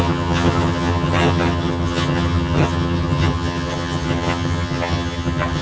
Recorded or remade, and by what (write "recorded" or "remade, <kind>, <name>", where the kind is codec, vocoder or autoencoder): remade, vocoder, HiFi-GAN